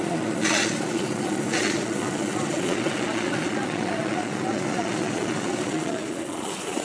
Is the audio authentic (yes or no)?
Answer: no